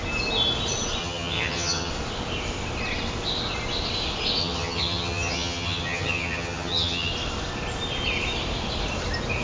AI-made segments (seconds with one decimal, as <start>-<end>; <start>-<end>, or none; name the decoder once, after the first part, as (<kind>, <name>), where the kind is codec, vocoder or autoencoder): 1.0-1.9 (vocoder, HiFi-GAN); 4.4-7.1